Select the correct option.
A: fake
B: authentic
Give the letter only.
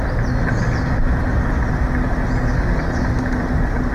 B